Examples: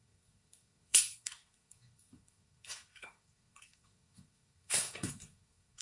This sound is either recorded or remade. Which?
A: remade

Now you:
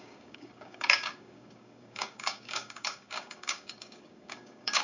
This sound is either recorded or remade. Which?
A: remade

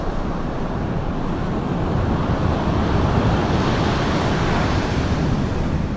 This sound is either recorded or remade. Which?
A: recorded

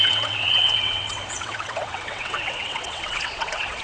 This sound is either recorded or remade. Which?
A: remade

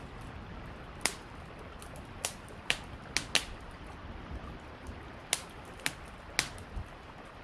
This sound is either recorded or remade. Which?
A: recorded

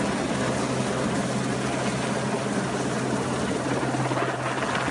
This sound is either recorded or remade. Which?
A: recorded